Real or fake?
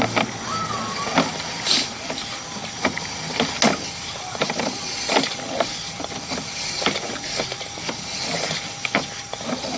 real